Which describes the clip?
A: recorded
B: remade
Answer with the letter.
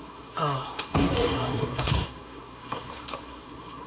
B